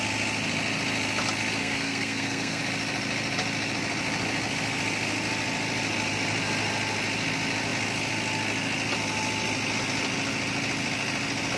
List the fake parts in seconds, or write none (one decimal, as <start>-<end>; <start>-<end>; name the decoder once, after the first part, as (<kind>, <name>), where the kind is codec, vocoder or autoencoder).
1.6-2.6 (codec, SNAC)